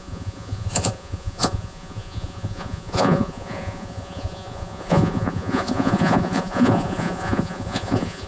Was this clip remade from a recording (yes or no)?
yes